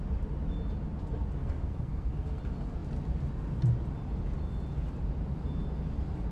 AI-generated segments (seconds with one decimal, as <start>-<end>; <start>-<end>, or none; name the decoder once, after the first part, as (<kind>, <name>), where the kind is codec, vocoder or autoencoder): 1.4-2.4 (codec, SNAC)